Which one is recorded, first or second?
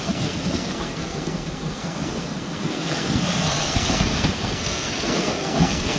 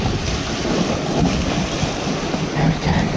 second